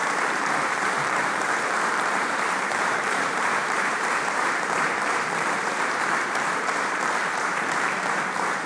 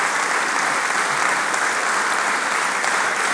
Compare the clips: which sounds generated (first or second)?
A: first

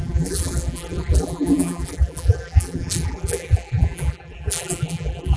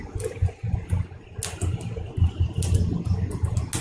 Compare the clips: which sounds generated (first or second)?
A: first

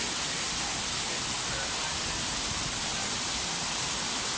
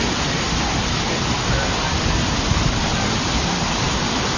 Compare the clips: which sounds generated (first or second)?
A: second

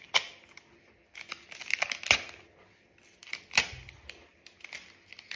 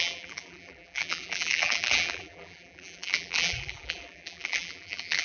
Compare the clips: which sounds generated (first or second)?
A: second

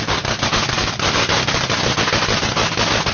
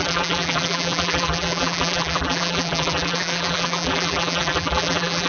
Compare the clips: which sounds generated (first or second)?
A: second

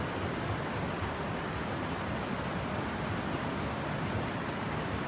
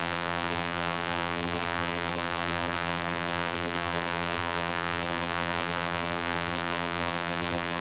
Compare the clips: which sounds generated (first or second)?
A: second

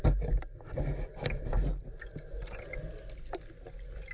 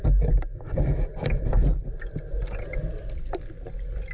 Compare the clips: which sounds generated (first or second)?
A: second